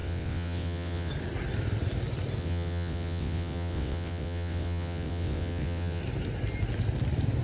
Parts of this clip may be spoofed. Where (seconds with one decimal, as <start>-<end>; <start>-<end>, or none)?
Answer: 0.0-1.1; 2.4-6.0